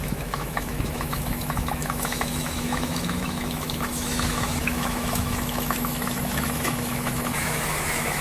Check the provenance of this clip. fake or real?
fake